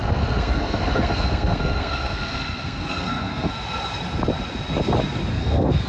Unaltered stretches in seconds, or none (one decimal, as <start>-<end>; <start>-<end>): 3.5-5.3